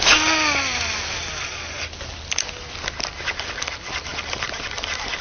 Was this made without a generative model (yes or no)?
yes